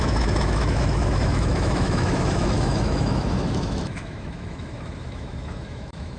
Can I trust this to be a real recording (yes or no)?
no